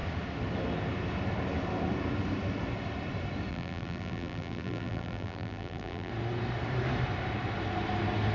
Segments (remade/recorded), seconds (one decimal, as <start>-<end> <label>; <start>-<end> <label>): 0.0-3.5 recorded; 3.5-6.1 remade; 6.1-8.3 recorded